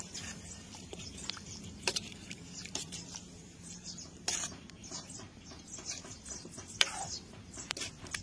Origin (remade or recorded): remade